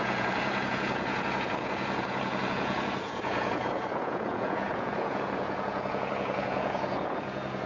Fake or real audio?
fake